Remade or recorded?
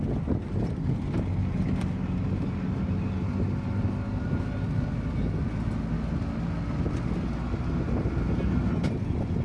recorded